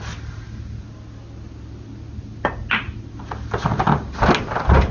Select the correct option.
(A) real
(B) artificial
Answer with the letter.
A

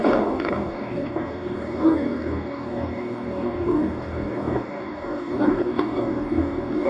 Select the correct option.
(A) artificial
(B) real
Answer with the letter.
A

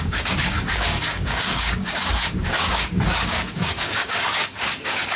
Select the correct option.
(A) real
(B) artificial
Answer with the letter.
B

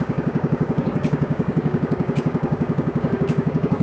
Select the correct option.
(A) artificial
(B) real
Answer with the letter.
A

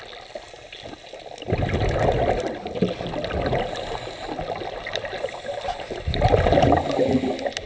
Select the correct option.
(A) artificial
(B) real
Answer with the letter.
B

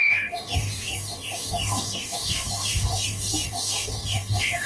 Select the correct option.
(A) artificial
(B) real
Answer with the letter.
A